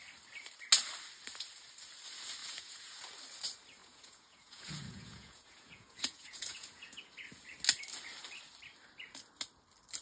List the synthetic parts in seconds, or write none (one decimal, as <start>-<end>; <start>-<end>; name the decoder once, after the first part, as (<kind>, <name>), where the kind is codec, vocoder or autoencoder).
2.4-3.0 (vocoder, Vocos); 3.8-7.0